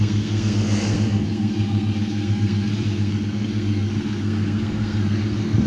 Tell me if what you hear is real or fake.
fake